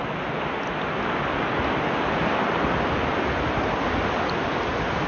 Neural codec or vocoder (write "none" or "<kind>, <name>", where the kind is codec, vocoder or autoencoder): none